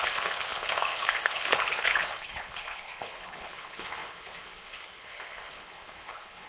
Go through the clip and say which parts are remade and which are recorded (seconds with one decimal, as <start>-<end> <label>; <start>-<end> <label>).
0.0-6.5 remade